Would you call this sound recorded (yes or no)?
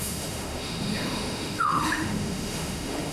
no